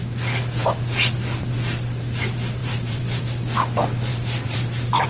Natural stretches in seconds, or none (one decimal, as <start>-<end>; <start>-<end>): 0.0-2.6; 3.2-4.1